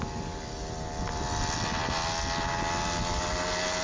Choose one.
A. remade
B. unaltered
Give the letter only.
B